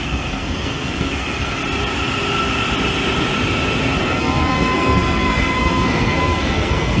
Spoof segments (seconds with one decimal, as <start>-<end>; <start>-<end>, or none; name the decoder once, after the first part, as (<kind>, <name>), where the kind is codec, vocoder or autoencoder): 0.0-1.6 (codec, SNAC); 4.0-7.0